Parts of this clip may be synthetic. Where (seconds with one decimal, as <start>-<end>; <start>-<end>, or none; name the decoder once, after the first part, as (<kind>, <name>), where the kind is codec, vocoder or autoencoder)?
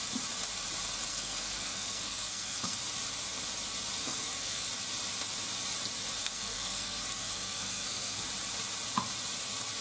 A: 1.1-2.8 (codec, SNAC); 4.0-4.7; 6.2-8.2